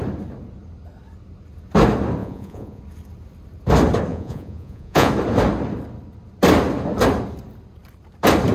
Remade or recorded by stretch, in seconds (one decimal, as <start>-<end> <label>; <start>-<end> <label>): 0.0-2.2 recorded; 2.2-2.8 remade; 2.8-4.1 recorded; 4.1-5.1 remade; 5.1-8.5 recorded